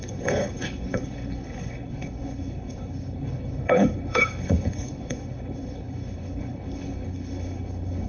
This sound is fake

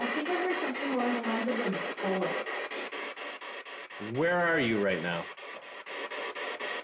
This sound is real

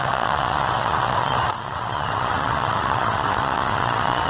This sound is fake